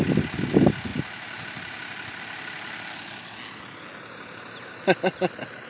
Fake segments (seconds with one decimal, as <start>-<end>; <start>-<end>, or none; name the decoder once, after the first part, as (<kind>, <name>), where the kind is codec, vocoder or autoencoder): 0.9-2.2 (vocoder, BigVGAN v2)